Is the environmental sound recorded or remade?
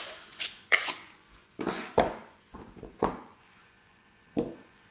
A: remade